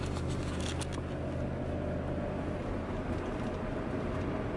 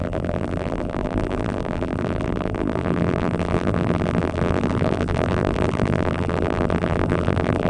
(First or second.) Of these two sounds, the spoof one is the second